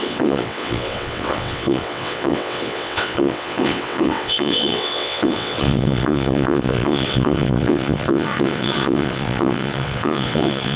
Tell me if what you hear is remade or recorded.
remade